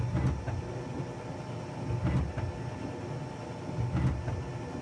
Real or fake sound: real